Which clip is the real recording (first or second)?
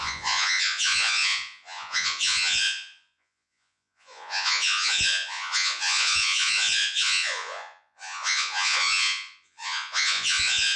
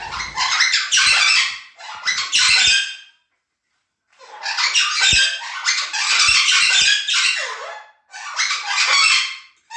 second